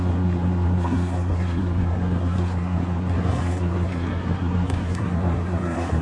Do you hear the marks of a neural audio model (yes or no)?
yes